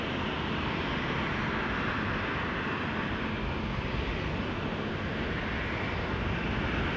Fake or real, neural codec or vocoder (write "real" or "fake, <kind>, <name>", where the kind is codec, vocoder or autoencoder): real